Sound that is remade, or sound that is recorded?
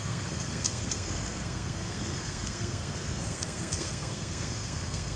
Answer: remade